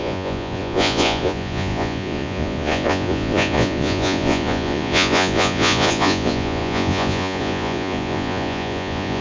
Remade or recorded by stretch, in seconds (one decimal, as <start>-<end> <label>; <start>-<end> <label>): 0.0-9.2 remade